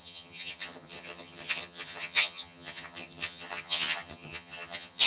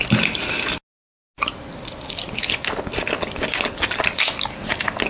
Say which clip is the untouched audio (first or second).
second